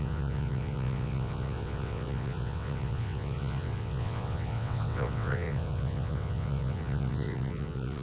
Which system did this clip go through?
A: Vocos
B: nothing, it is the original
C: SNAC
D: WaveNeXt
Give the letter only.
D